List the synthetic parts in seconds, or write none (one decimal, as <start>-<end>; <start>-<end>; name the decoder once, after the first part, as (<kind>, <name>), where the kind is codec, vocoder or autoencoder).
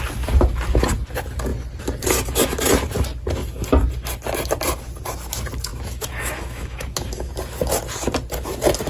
5.7-7.3 (autoencoder, DAC-VAE)